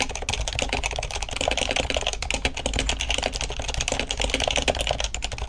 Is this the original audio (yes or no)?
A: yes